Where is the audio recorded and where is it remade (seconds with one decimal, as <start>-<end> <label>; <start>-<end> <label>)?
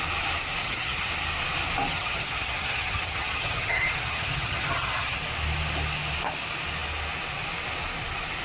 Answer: 0.0-0.6 recorded; 0.6-1.1 remade; 1.1-1.9 recorded; 1.9-5.2 remade; 5.2-8.4 recorded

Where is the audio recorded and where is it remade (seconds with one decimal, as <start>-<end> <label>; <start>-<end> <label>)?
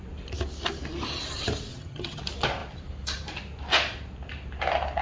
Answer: 0.0-1.7 recorded; 1.7-2.2 remade; 2.2-5.0 recorded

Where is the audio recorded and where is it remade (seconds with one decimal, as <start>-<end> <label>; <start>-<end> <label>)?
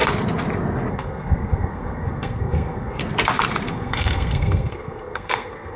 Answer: 0.0-0.9 recorded; 0.9-3.0 remade; 3.0-3.7 recorded; 3.7-5.8 remade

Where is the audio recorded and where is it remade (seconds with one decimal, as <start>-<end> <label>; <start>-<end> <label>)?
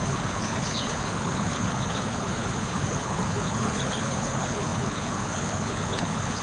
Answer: 0.0-6.4 remade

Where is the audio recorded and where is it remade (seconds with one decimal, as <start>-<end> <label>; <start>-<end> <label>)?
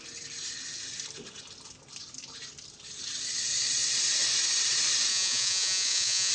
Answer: 0.0-5.1 recorded; 5.1-6.3 remade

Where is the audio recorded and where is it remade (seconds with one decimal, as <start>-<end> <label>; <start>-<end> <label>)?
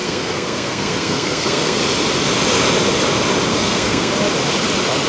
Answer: 0.0-1.8 remade; 1.8-3.5 recorded; 3.5-4.1 remade; 4.1-5.1 recorded